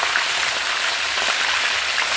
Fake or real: real